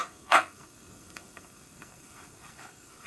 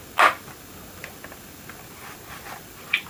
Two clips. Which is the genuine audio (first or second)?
second